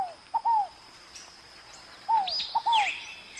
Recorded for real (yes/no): yes